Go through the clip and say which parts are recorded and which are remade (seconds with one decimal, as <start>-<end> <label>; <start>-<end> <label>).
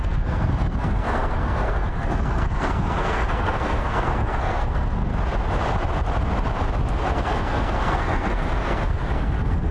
0.0-5.1 remade; 5.1-7.0 recorded; 7.0-9.7 remade